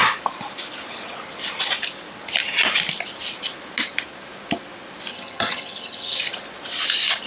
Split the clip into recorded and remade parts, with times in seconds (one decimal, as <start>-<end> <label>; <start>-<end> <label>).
0.0-5.1 recorded; 5.1-6.2 remade; 6.2-7.3 recorded